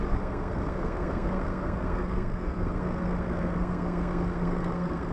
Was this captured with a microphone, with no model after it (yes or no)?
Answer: no